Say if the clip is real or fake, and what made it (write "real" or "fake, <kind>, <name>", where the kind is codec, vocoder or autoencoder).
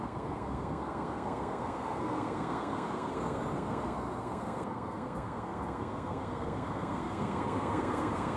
fake, codec, SNAC